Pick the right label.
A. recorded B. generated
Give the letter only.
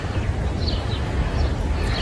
A